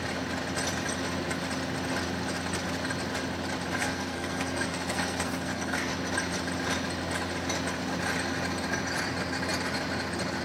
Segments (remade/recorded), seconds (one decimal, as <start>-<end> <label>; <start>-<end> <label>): 0.0-3.8 recorded; 3.8-5.9 remade; 5.9-10.4 recorded